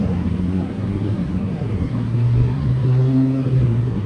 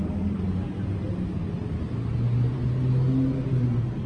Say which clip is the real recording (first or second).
second